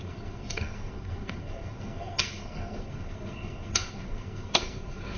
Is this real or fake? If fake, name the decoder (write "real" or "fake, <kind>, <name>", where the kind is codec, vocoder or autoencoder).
fake, codec, SNAC